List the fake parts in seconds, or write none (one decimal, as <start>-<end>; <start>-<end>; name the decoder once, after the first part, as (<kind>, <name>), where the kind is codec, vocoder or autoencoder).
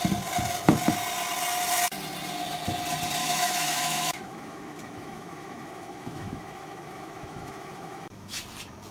3.2-8.4 (autoencoder, DAC-VAE)